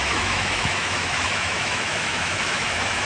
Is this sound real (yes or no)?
no